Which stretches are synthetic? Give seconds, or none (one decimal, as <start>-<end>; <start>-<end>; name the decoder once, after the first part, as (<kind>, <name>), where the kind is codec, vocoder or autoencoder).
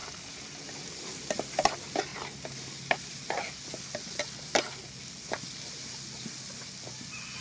none